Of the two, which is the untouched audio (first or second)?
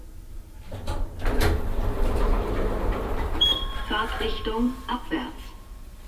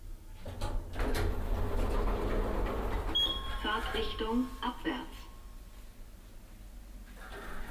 second